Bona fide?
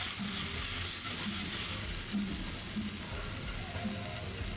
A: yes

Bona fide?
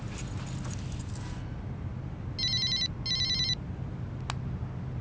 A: yes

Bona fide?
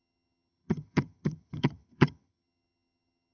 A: no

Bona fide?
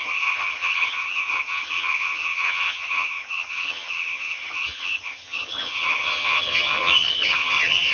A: no